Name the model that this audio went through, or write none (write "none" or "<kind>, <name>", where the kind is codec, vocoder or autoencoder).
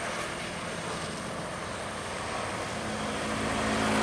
none